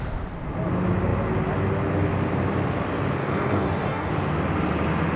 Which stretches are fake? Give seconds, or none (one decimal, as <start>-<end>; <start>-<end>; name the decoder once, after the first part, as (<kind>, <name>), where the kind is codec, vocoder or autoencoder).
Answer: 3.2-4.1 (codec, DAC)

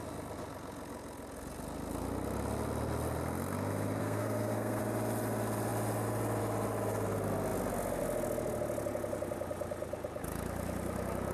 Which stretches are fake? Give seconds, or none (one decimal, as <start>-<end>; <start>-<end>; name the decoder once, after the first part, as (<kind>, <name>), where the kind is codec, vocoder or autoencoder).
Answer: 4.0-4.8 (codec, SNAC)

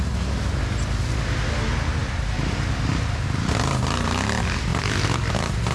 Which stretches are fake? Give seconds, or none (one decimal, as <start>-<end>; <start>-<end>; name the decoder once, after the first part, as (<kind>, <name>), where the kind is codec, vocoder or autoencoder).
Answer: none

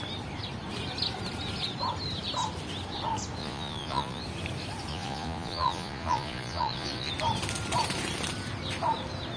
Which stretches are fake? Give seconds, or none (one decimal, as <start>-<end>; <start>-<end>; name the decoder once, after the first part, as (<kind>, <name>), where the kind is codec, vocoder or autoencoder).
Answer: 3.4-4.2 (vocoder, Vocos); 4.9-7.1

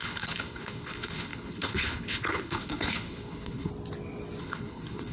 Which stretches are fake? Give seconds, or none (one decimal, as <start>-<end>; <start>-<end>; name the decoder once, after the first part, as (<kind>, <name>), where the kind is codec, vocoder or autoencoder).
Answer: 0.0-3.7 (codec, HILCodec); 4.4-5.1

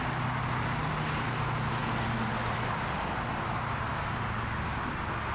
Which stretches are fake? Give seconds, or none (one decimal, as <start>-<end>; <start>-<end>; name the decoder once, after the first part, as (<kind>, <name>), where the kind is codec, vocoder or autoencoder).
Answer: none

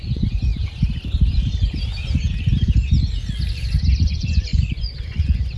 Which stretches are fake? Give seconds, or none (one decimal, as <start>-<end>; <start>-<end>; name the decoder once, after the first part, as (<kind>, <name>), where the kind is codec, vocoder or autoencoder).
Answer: 0.0-0.5 (vocoder, Vocos); 3.9-5.6